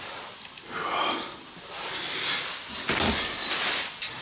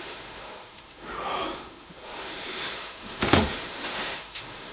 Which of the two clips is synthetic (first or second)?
second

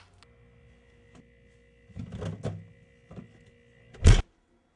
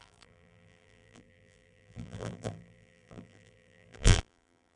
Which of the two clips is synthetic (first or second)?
second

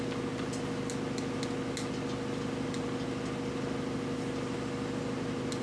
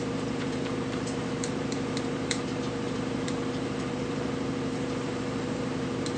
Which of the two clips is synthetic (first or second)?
second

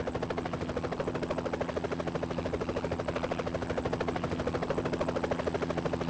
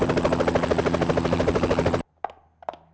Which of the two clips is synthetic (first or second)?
first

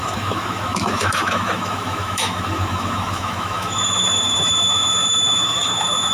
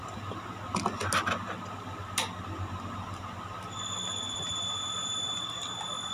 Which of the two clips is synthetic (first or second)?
first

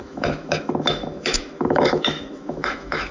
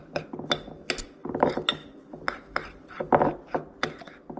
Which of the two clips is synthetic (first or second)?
first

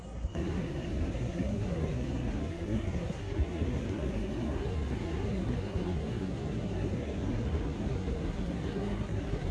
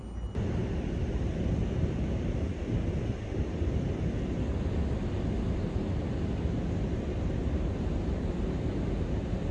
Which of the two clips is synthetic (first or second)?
first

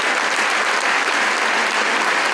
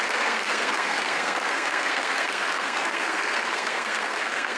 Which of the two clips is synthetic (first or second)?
second